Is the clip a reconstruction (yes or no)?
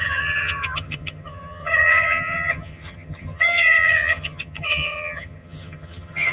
yes